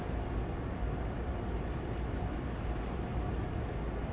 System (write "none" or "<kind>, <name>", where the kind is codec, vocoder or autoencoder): none